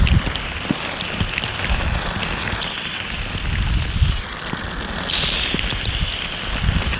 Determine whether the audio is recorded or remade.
recorded